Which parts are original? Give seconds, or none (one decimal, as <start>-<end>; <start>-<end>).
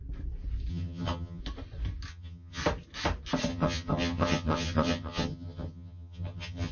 0.0-0.7; 1.4-2.1; 2.6-3.5